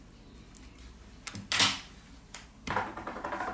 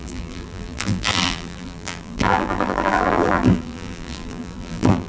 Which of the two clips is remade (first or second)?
second